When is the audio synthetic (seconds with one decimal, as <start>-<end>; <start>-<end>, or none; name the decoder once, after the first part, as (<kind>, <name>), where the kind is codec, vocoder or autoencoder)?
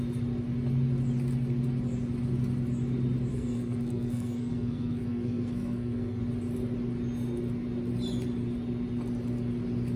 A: 3.3-6.2 (codec, SNAC)